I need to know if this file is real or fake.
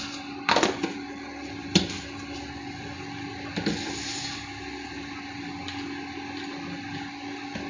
real